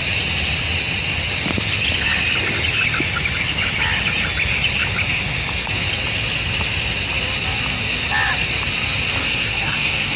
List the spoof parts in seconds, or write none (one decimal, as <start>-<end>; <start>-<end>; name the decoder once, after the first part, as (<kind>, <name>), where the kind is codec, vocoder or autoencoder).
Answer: 9.2-10.2 (codec, SNAC)